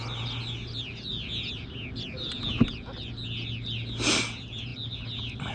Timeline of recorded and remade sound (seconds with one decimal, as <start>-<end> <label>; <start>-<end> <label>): 0.0-5.5 recorded